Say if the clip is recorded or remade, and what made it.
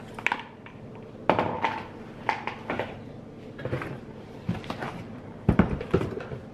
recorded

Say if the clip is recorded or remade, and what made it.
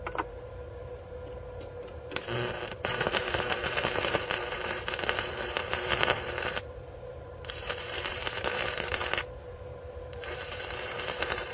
remade, vocoder, BigVGAN v2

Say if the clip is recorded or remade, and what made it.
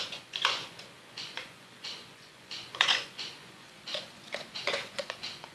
remade, vocoder, Vocos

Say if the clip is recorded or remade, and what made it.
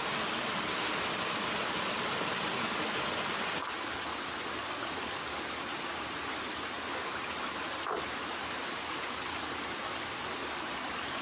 recorded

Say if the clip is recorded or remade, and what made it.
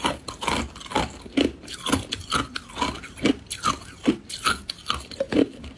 recorded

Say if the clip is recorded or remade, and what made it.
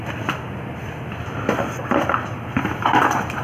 recorded